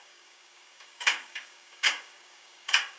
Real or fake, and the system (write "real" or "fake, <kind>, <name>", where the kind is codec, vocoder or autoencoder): fake, codec, DAC